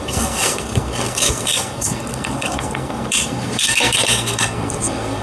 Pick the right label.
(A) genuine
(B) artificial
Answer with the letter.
B